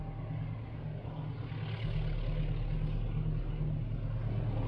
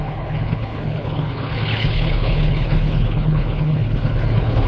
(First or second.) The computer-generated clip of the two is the second